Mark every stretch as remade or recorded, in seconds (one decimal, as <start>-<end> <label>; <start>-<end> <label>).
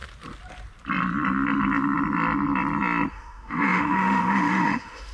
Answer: 0.0-3.1 recorded; 3.1-5.1 remade